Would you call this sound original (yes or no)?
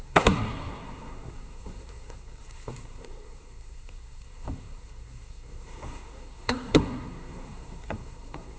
no